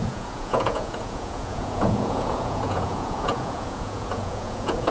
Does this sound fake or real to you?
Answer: fake